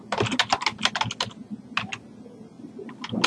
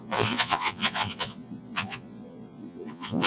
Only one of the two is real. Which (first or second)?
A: first